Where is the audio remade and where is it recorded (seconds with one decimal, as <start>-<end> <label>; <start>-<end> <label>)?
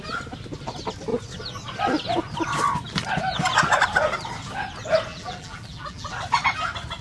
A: 0.0-5.1 recorded; 5.1-6.1 remade; 6.1-7.0 recorded